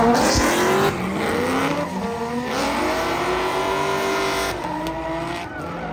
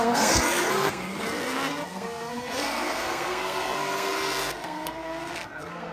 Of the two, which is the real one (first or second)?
first